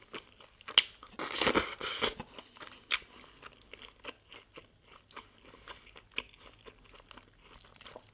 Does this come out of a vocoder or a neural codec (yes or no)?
no